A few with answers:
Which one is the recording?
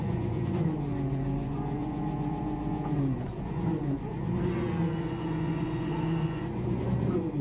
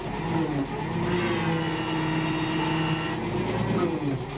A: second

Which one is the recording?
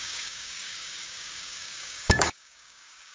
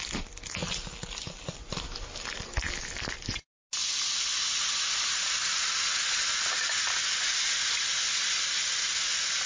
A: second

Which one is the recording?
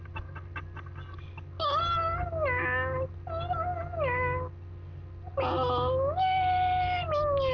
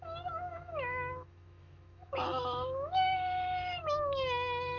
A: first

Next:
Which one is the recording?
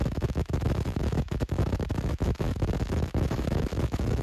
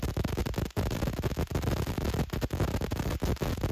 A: second